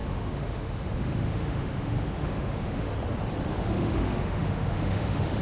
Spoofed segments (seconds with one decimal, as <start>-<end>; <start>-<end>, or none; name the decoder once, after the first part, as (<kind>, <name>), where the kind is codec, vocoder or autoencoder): 0.0-2.9 (autoencoder, DAC-VAE); 3.5-5.4